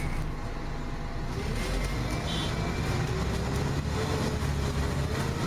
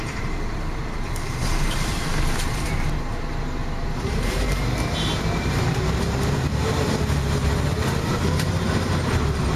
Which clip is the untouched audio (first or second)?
first